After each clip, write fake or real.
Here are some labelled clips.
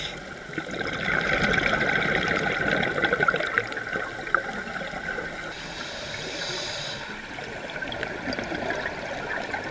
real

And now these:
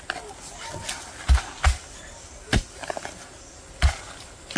real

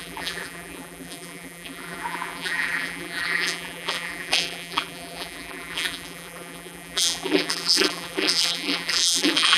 fake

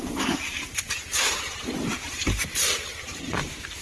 fake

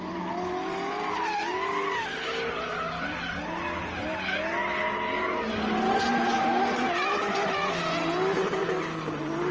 real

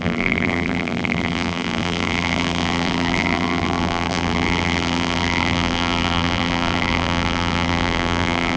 fake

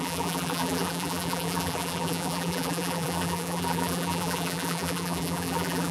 fake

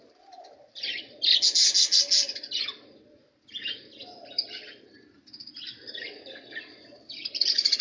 real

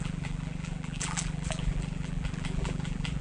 fake